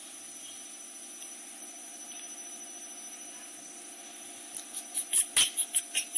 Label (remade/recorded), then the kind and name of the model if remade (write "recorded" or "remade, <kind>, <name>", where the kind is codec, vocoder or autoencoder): recorded